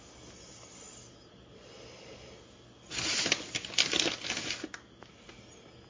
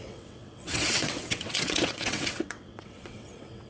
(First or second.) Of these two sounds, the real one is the first